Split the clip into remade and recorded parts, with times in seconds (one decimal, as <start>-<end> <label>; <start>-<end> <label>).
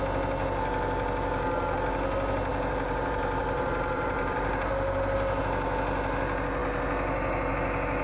0.0-2.5 recorded; 2.5-5.4 remade; 5.4-8.0 recorded